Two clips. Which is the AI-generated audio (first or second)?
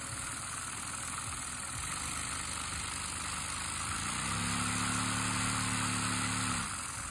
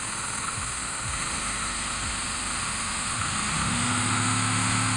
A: second